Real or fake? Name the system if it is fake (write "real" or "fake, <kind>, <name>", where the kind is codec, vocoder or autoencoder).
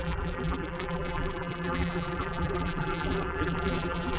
fake, vocoder, BigVGAN v2